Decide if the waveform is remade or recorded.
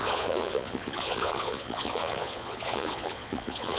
remade